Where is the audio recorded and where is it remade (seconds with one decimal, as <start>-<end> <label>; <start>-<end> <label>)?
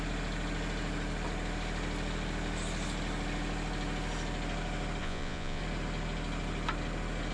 0.0-5.0 recorded; 5.0-5.6 remade; 5.6-7.3 recorded